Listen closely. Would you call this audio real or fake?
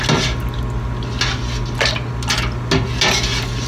real